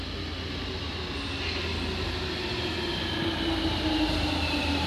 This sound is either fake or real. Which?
real